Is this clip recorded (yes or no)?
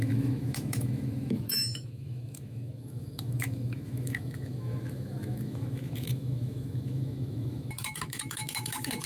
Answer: no